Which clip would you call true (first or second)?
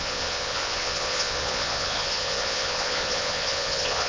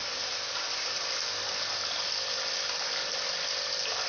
second